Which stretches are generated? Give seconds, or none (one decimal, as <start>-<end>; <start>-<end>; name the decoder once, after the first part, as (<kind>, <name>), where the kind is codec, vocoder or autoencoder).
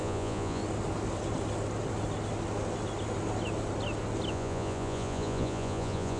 0.0-0.6 (vocoder, Vocos); 4.3-6.2